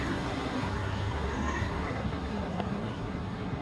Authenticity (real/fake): fake